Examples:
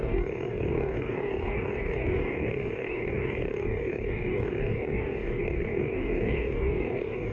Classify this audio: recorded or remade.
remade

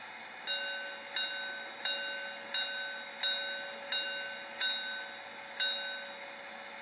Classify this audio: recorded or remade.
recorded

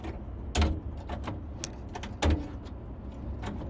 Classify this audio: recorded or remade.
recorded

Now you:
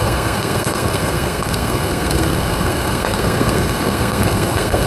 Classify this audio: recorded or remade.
remade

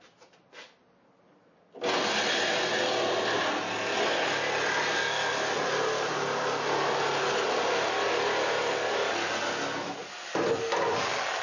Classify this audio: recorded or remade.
recorded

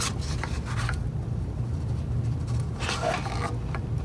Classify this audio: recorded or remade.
recorded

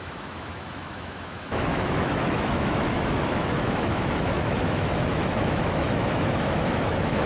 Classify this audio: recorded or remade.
remade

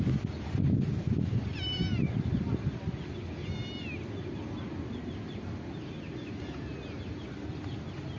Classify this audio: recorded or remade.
recorded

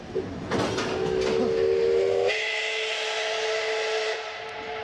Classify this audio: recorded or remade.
recorded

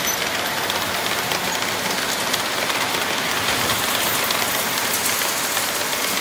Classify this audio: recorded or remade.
recorded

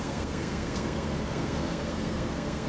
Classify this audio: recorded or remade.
remade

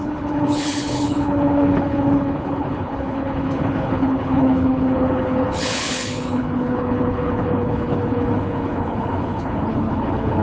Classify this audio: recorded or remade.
remade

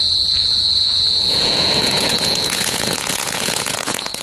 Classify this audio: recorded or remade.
remade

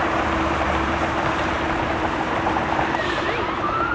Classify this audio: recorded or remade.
remade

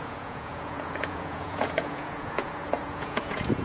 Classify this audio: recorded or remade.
remade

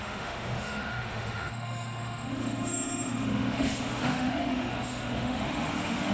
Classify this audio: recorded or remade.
remade